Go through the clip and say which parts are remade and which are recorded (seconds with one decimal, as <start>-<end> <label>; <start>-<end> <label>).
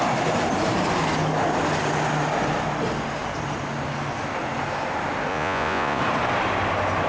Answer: 0.0-5.3 recorded; 5.3-6.0 remade; 6.0-7.1 recorded